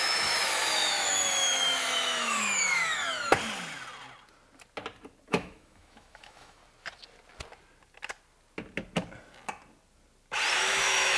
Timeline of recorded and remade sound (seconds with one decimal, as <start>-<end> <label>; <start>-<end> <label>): 0.0-3.3 remade; 3.3-5.3 recorded; 5.3-6.6 remade; 6.6-10.6 recorded; 10.6-11.2 remade